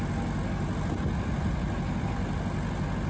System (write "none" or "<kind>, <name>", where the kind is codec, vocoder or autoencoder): none